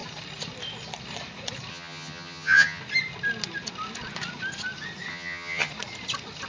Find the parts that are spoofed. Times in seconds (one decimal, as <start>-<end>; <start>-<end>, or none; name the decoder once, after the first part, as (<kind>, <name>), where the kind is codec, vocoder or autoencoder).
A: 1.7-2.8 (vocoder, HiFi-GAN); 5.1-5.7